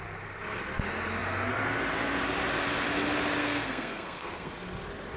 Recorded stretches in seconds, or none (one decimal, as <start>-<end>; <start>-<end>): 0.0-3.4; 4.5-5.2